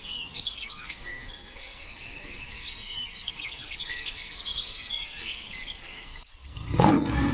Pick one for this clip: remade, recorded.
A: remade